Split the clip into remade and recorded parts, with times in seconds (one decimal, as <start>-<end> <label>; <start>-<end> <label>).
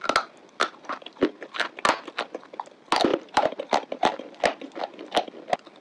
0.0-3.1 recorded; 3.1-4.1 remade; 4.1-5.8 recorded